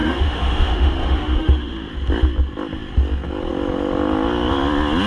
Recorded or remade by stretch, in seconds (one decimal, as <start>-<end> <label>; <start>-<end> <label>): 0.0-1.9 remade; 1.9-5.1 recorded